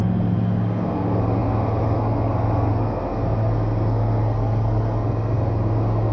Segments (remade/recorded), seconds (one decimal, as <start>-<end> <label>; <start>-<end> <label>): 0.0-6.1 remade